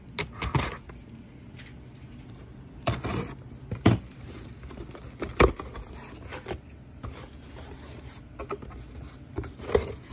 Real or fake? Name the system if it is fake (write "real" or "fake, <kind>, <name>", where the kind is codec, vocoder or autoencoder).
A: real